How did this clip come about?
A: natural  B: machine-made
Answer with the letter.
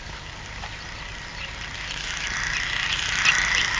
A